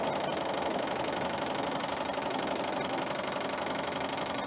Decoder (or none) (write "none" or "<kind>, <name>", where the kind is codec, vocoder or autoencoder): none